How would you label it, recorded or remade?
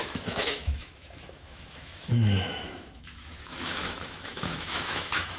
remade